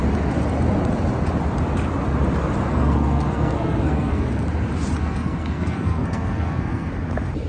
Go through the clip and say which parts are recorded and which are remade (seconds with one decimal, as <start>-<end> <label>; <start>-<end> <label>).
0.0-2.7 recorded; 2.7-4.4 remade; 4.4-5.0 recorded; 5.0-6.9 remade; 6.9-7.5 recorded